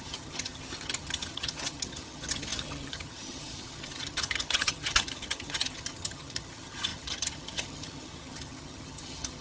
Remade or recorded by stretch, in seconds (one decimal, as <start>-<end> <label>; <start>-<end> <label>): 0.0-9.4 remade